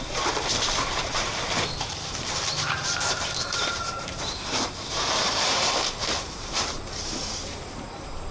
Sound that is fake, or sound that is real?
fake